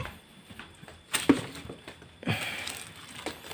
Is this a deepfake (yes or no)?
no